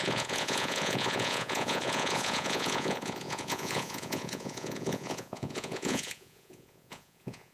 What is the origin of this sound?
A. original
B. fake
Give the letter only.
B